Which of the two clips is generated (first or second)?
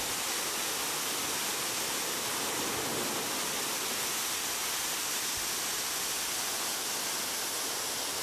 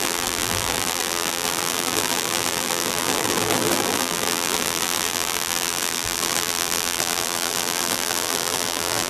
second